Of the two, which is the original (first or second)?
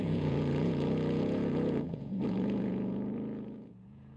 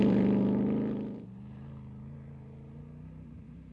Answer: second